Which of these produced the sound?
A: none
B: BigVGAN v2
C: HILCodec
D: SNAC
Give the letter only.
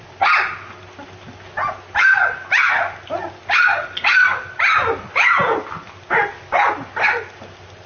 A